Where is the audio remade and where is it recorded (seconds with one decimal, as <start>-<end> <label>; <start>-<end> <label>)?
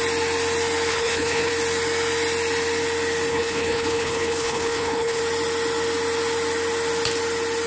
0.0-0.9 recorded; 0.9-1.5 remade; 1.5-3.3 recorded; 3.3-5.2 remade; 5.2-7.7 recorded